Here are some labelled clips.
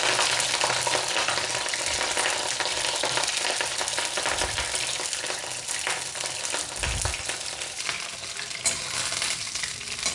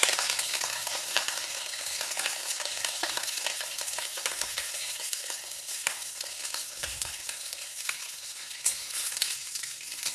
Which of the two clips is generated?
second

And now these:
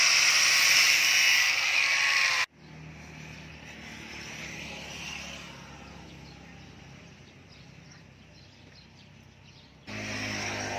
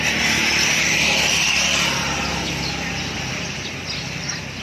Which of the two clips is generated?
second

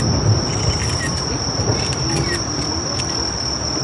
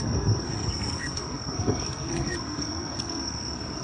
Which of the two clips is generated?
second